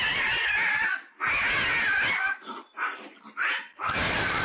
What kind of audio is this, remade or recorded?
recorded